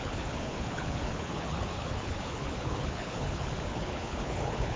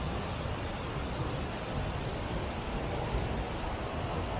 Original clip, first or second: second